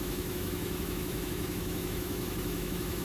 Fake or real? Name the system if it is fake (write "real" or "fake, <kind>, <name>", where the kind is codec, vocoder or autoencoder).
fake, autoencoder, DAC-VAE